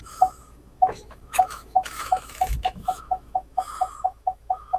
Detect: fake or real fake